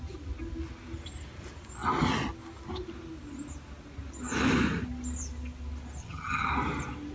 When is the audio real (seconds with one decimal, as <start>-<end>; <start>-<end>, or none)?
0.0-6.0; 6.5-7.1